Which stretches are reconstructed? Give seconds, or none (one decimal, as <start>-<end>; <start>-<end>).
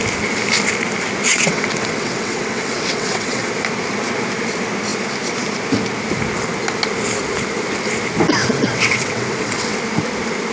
1.3-3.4; 8.4-9.8